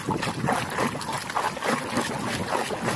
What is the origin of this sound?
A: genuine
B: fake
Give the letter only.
A